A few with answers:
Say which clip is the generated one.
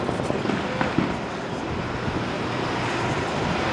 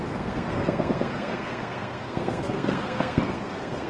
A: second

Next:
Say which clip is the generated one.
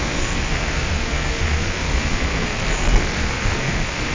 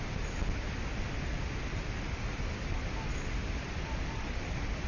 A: first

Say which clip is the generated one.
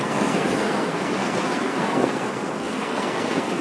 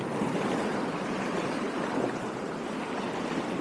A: first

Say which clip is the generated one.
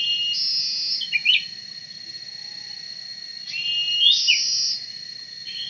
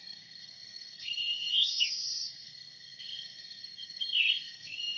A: second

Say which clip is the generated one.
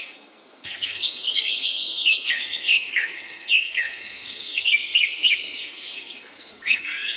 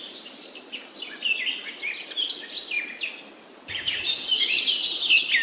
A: first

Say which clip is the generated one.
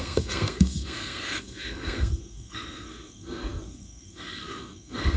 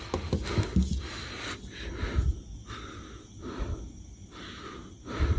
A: first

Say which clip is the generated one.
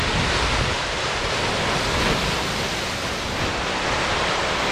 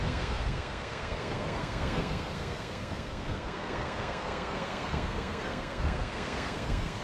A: second